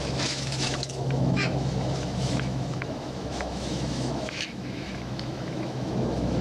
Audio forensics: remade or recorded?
remade